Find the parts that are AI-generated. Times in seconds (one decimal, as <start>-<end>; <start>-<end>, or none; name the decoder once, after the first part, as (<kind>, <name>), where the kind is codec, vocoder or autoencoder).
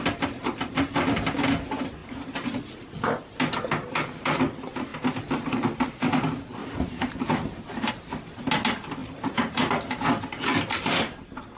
6.6-7.9 (vocoder, BigVGAN v2); 9.0-10.0